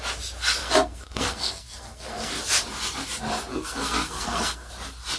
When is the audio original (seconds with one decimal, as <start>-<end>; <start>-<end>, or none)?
0.0-0.6; 2.3-3.5; 4.7-5.2

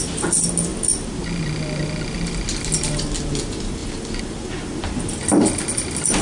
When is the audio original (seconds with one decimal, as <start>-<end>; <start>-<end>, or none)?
0.0-6.2

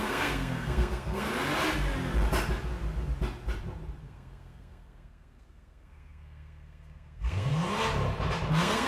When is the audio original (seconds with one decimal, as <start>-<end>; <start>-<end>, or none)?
1.3-4.0; 7.5-8.5

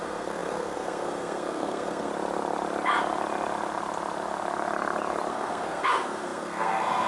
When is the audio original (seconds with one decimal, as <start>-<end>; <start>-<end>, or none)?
2.1-5.3

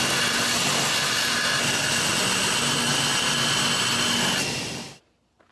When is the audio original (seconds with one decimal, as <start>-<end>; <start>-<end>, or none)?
0.0-5.5

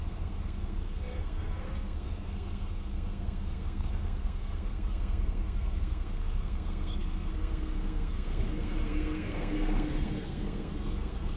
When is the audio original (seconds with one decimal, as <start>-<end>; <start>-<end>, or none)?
none